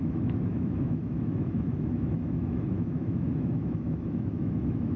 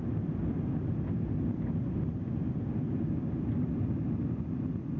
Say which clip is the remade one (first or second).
first